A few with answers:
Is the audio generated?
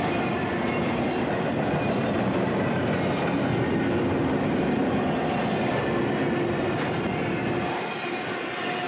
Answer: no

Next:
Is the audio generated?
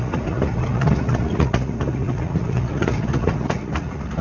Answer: yes